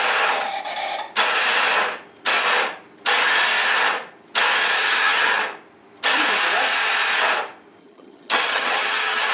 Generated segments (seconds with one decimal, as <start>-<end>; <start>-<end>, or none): 4.8-5.4; 7.8-9.3